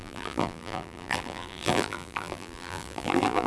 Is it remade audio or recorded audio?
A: remade